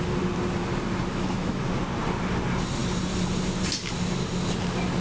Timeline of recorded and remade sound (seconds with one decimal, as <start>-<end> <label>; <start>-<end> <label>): 0.0-1.1 recorded; 1.1-1.6 remade; 1.6-5.0 recorded